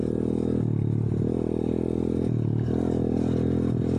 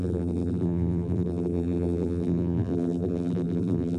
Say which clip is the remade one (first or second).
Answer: second